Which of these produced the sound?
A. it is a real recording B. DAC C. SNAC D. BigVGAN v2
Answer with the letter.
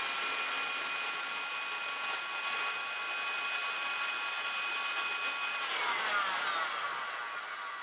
A